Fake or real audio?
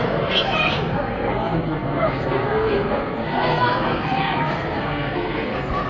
fake